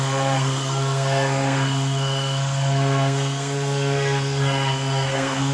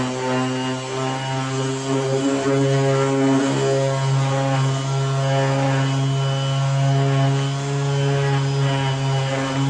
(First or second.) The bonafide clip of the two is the second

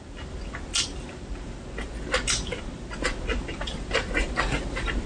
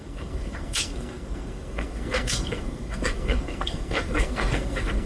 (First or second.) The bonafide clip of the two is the first